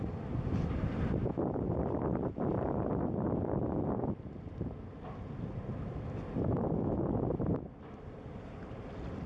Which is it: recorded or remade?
recorded